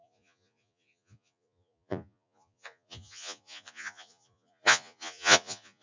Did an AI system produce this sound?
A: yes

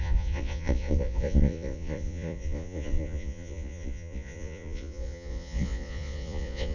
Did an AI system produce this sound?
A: yes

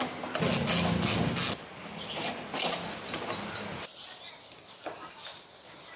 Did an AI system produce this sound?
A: no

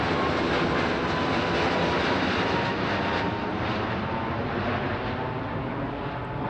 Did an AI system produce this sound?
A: no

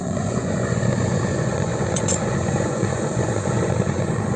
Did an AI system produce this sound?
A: yes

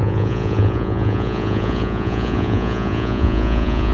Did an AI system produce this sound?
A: yes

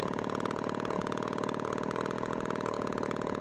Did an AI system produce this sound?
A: yes